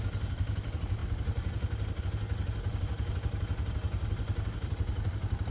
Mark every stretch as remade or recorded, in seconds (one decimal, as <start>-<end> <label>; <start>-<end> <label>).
0.0-5.5 recorded